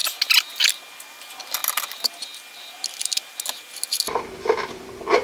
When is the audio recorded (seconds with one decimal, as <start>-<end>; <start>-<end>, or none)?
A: 0.0-5.2